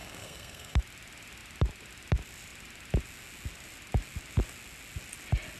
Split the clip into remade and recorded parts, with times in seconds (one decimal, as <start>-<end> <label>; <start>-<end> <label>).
0.0-0.8 remade; 0.8-5.6 recorded